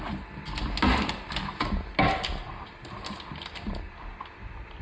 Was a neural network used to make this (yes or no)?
no